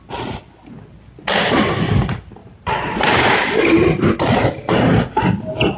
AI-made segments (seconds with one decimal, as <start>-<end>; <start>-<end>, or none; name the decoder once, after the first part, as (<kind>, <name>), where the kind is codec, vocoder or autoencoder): 2.4-4.4 (vocoder, BigVGAN v2)